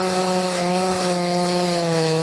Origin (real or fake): fake